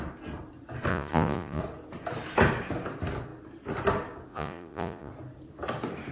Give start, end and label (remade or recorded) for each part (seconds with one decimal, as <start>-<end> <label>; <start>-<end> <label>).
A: 0.0-0.9 recorded; 0.9-1.6 remade; 1.6-4.3 recorded; 4.3-5.1 remade; 5.1-6.1 recorded